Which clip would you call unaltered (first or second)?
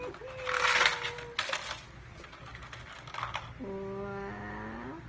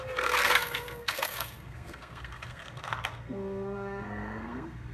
first